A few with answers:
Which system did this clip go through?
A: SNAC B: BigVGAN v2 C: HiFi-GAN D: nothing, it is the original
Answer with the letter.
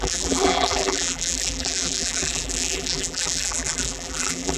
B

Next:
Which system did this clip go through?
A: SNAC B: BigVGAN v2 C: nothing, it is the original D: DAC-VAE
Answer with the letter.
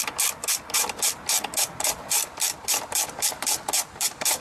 B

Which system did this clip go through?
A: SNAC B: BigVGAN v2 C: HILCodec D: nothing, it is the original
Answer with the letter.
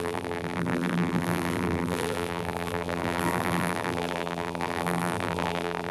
B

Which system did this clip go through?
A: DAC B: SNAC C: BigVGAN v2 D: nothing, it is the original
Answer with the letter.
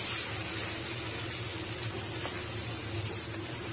D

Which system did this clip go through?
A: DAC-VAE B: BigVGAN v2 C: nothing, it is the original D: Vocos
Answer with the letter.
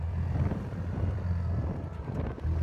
B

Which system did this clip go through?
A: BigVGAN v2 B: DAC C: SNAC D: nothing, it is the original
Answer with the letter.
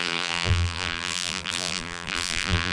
A